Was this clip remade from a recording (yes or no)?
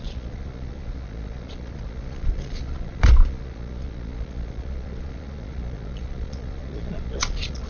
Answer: yes